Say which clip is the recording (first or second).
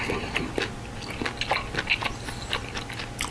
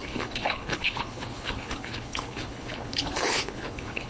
first